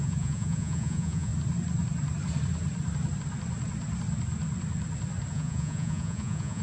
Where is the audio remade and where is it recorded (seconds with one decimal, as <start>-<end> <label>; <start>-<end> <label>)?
0.0-1.3 remade; 1.3-5.3 recorded; 5.3-6.6 remade